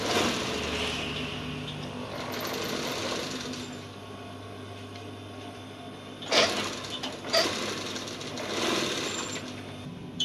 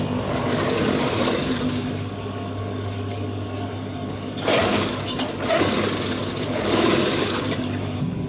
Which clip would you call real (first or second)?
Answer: first